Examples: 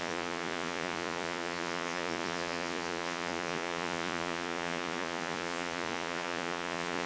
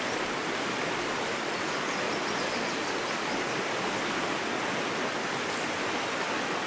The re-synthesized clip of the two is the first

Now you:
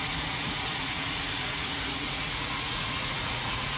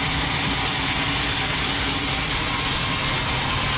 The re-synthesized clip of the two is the first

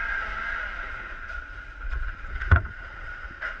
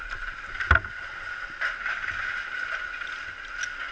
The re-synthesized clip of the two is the first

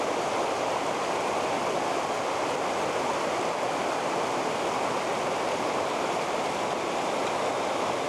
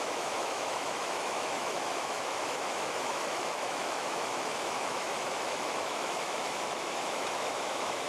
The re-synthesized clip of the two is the second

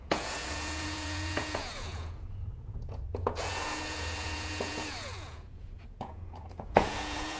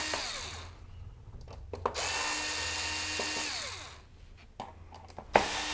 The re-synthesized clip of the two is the first